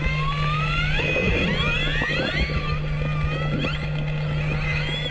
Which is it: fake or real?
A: real